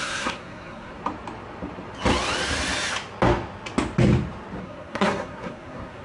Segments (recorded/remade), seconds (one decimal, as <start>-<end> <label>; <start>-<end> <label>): 0.0-1.0 remade; 1.0-4.6 recorded; 4.6-6.0 remade